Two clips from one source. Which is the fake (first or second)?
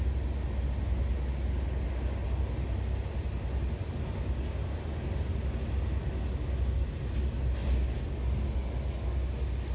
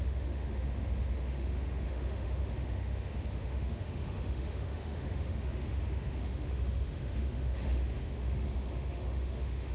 second